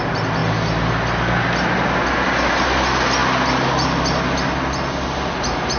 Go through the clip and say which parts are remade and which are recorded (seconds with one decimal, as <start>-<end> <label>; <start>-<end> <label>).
0.0-5.8 recorded